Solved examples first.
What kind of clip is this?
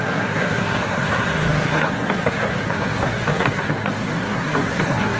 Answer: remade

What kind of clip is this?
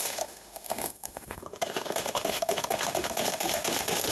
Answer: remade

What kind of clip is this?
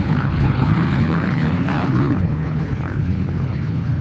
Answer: remade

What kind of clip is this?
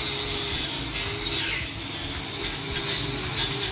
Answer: recorded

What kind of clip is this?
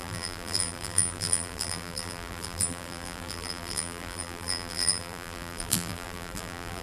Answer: remade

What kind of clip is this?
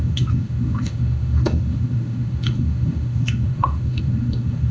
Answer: remade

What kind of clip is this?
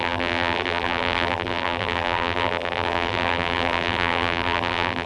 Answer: remade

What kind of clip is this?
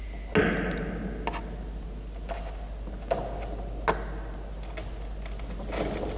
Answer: recorded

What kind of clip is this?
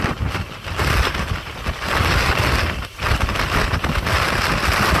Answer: recorded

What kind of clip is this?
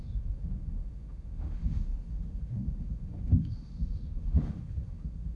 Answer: remade